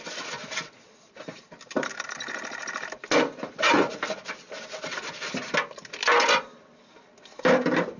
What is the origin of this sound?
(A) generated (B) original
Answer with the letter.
B